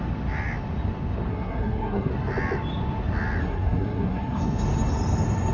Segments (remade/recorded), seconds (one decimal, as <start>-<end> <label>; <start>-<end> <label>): 0.0-1.3 recorded; 1.3-2.1 remade; 2.1-3.4 recorded; 3.4-4.4 remade; 4.4-5.5 recorded